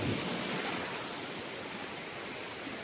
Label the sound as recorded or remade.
recorded